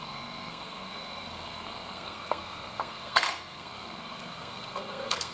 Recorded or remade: remade